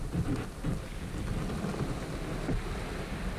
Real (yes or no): yes